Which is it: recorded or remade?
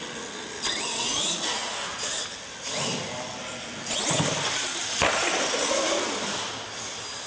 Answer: recorded